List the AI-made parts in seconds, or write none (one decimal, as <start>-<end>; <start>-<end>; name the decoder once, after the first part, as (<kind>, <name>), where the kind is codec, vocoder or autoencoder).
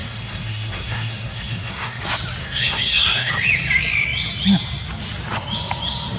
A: 0.0-2.0 (codec, SNAC); 2.4-3.3